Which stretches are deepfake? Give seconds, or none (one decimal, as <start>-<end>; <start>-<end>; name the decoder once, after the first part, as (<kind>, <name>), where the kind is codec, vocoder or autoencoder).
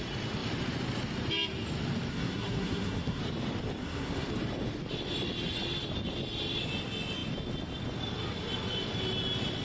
2.1-3.2 (codec, SNAC); 3.8-4.3